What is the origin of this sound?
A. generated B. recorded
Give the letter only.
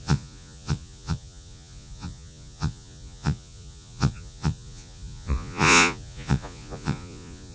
A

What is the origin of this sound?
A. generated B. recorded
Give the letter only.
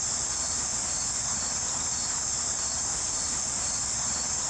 A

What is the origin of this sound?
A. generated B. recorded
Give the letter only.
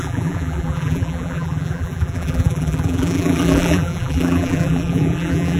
A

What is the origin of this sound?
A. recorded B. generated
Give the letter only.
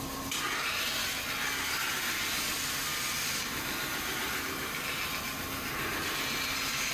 A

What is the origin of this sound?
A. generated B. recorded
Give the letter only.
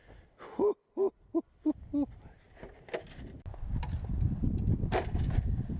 B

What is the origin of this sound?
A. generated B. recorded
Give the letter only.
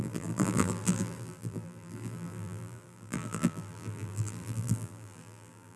A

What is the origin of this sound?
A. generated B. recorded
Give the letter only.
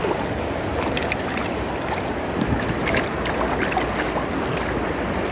B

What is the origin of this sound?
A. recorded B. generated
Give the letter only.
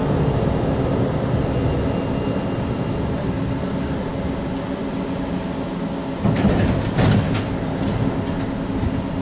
A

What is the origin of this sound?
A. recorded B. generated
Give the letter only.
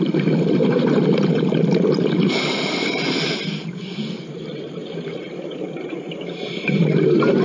A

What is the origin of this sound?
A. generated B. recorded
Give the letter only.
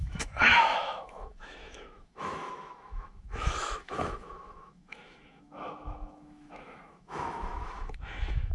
A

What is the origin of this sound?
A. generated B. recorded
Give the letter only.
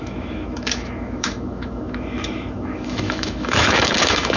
A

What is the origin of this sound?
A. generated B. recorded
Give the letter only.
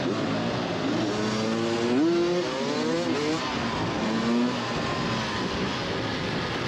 B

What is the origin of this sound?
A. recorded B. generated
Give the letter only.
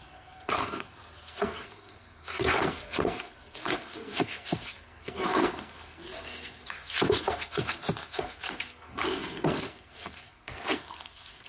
B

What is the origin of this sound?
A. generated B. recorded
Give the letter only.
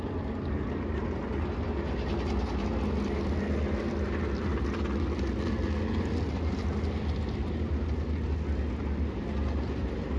B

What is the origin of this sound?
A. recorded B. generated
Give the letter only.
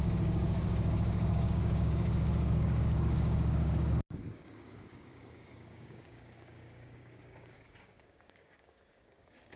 B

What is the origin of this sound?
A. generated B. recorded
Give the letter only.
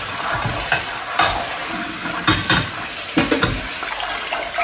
B